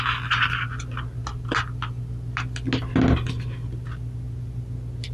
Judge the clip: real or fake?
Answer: real